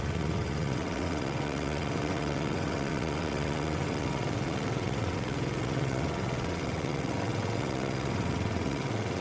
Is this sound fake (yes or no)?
yes